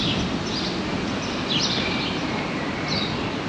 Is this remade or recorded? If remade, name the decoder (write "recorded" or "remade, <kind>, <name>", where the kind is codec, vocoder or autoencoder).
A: recorded